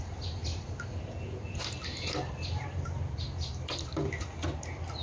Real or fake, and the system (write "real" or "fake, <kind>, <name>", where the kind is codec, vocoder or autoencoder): real